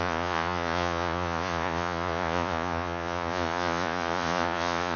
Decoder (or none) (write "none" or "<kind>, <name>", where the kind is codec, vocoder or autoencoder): vocoder, Vocos